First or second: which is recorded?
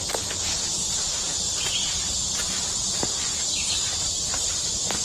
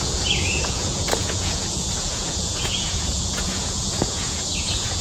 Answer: first